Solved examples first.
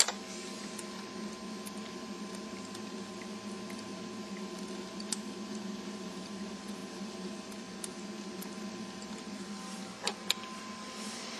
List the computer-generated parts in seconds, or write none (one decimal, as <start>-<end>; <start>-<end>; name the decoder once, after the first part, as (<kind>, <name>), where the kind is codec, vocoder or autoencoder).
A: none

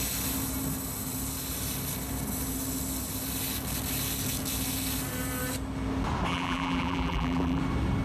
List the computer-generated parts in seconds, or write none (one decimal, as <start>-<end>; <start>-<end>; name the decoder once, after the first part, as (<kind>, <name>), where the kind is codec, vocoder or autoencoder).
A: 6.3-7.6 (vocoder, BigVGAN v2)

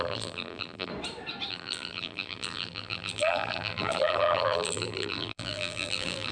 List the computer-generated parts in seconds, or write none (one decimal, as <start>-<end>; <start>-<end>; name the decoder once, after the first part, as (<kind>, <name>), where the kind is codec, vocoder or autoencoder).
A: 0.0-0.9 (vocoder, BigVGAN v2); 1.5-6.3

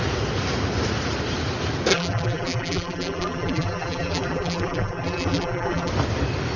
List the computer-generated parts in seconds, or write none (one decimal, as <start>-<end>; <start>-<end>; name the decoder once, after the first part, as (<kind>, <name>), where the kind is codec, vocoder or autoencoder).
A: 1.9-5.9 (vocoder, BigVGAN v2)

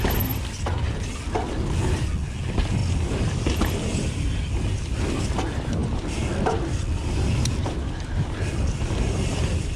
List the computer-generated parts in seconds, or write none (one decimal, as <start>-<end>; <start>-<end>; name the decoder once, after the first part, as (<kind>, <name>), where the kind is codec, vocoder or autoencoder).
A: none

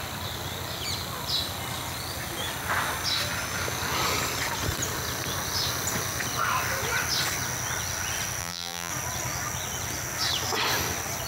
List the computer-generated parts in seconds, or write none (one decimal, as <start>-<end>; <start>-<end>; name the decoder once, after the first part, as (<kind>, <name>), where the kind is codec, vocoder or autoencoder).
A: 8.4-8.9 (vocoder, BigVGAN v2)

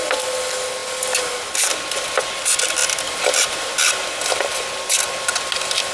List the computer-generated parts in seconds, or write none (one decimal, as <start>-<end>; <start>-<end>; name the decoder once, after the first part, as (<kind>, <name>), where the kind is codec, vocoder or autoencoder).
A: none